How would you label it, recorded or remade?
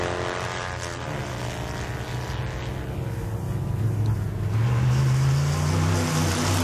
recorded